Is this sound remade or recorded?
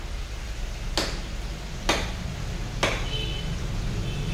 recorded